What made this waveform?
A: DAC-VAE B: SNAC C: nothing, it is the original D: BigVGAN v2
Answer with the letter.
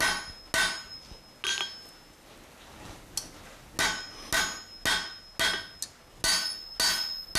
C